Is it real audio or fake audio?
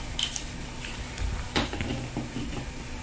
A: real